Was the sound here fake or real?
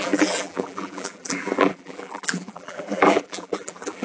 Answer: fake